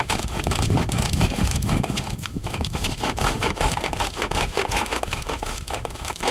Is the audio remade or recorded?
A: remade